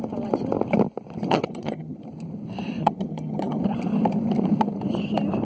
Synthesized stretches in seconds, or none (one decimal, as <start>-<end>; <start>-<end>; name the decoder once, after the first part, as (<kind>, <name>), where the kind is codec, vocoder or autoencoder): 1.3-2.0 (vocoder, HiFi-GAN); 2.8-3.6